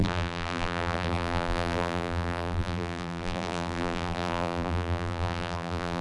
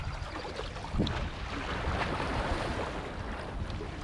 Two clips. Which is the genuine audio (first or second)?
second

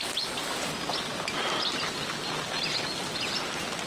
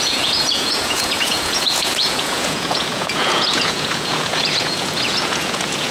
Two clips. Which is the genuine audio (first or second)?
first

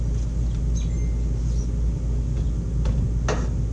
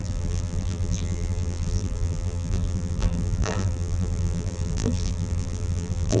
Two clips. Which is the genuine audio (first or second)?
first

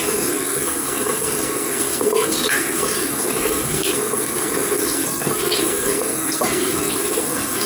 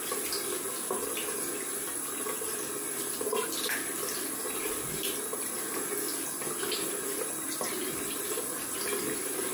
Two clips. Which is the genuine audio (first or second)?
second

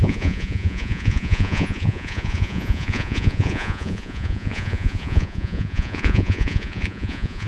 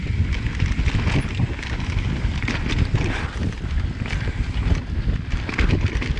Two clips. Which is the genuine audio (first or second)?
second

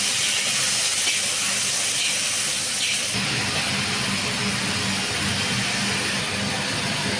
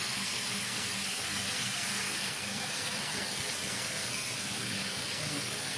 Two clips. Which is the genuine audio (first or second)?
first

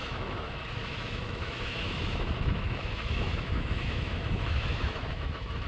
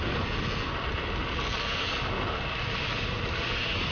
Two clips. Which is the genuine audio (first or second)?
second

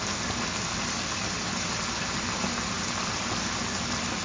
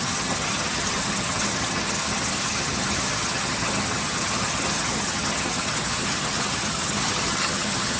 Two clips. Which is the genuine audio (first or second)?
first